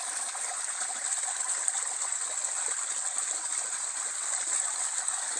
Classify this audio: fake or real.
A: real